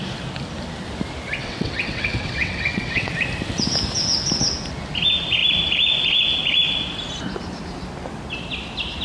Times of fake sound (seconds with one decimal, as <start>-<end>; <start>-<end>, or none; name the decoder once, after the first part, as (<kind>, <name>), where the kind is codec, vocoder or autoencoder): 1.4-3.1 (vocoder, WaveNeXt)